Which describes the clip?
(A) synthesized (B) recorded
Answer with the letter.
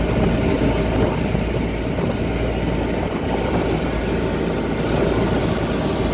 B